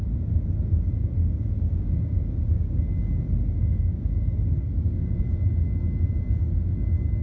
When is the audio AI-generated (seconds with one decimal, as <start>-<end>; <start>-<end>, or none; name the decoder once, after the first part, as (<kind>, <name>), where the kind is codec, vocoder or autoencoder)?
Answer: 1.2-2.8 (codec, DAC); 3.7-5.2